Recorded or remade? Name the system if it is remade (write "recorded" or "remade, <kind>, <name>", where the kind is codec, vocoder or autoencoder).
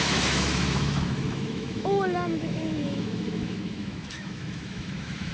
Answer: remade, autoencoder, DAC-VAE